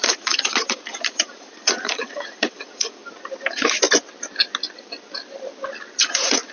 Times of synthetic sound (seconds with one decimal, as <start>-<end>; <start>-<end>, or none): 0.0-3.0; 6.0-6.5